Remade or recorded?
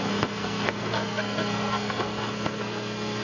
remade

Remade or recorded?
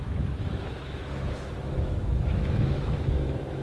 remade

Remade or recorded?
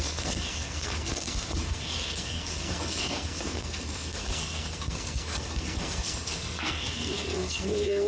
remade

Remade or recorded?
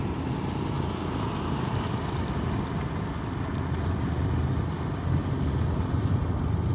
recorded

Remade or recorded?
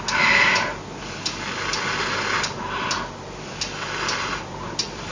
recorded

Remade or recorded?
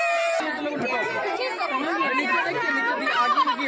recorded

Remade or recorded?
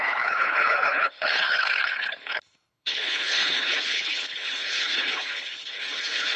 remade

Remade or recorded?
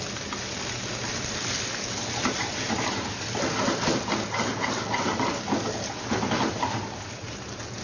recorded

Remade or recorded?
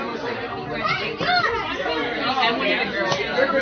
recorded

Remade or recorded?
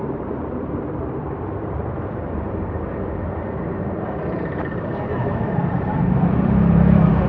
remade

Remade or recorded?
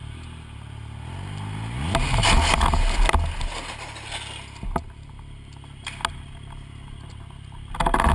recorded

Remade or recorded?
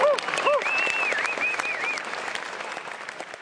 recorded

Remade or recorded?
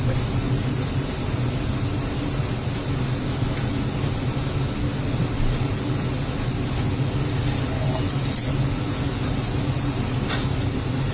recorded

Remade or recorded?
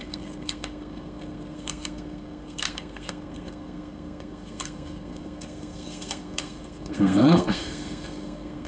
remade